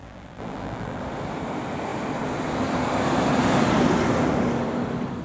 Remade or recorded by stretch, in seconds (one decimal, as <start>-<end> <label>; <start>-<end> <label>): 0.0-1.0 remade; 1.0-5.2 recorded